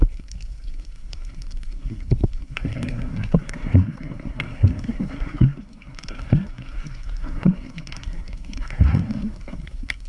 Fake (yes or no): yes